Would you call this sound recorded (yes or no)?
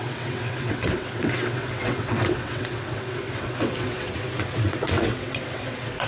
no